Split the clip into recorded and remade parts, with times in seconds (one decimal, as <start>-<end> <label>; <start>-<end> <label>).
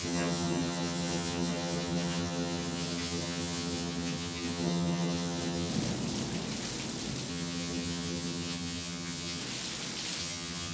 0.0-5.7 remade; 5.7-7.3 recorded; 7.3-9.4 remade; 9.4-10.2 recorded; 10.2-10.7 remade